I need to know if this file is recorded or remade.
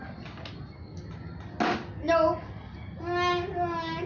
recorded